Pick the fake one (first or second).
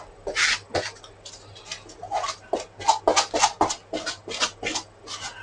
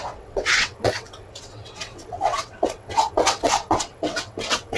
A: second